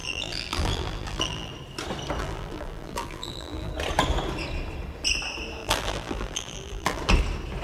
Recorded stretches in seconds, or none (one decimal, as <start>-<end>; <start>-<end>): 1.5-2.2; 3.7-5.6; 7.0-7.6